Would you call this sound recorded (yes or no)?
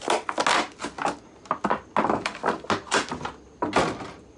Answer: yes